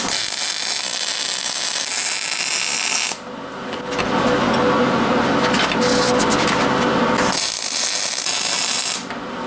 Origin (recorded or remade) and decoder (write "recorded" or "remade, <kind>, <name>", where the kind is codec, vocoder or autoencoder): recorded